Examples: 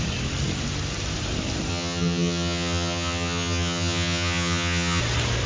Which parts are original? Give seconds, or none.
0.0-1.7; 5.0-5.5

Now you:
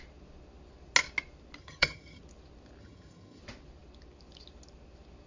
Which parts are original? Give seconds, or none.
0.0-1.6; 2.2-2.8; 3.4-5.3

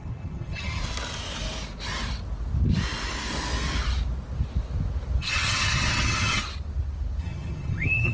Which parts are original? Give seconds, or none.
0.8-5.2; 6.4-7.2

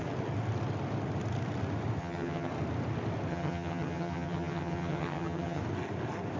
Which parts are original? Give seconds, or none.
0.0-2.0; 2.5-3.3; 5.6-6.4